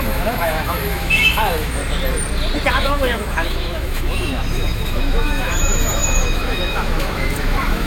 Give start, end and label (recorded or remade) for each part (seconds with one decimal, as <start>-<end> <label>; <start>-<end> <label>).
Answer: 0.0-1.8 remade; 1.8-2.7 recorded; 2.7-7.9 remade

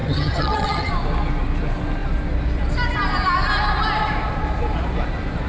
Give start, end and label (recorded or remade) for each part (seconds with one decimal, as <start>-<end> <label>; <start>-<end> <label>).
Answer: 0.0-0.9 remade; 0.9-5.5 recorded

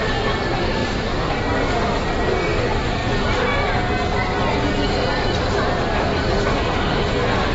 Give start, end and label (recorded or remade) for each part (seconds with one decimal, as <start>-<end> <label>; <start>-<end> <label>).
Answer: 0.0-7.5 recorded

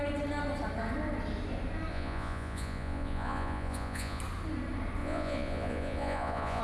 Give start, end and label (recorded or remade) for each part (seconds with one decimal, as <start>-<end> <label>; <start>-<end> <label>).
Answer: 0.0-1.9 recorded; 1.9-4.2 remade; 4.2-5.0 recorded; 5.0-6.6 remade

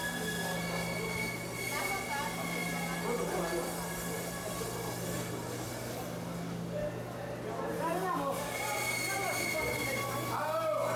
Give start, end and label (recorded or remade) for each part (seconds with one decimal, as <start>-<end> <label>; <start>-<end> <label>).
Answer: 0.0-11.0 recorded

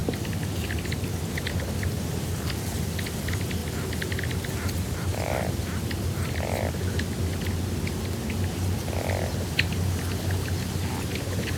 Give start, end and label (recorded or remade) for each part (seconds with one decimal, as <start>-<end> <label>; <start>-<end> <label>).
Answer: 0.0-11.6 recorded